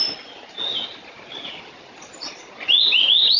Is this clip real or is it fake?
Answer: real